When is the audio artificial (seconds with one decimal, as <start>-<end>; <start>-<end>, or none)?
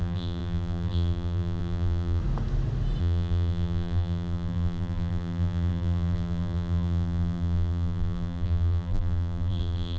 0.0-2.2; 3.0-10.0